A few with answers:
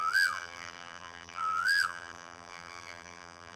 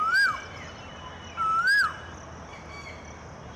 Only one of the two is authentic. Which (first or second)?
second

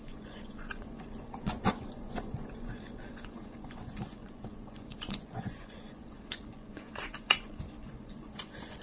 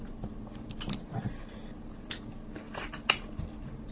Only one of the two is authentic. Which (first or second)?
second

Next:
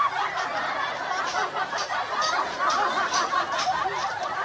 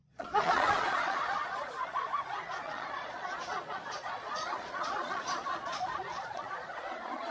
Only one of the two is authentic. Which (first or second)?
first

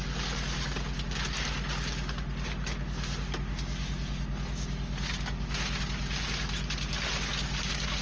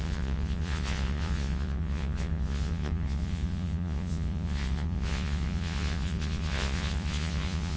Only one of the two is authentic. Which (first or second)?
first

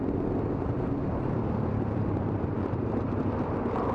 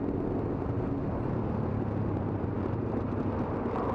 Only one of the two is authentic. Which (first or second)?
second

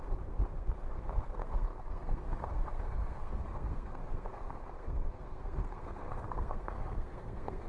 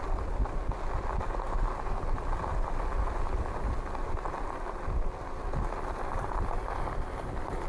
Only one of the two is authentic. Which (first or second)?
second